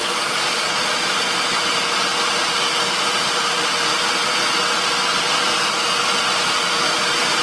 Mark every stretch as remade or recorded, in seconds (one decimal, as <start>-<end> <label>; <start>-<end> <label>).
0.0-1.3 remade; 1.3-7.4 recorded